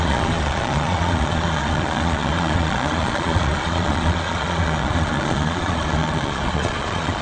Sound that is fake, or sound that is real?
fake